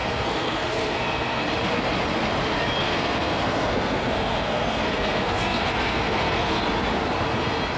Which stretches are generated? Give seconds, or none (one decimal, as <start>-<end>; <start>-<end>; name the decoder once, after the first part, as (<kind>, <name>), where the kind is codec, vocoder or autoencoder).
0.0-1.4 (codec, SNAC); 2.8-6.6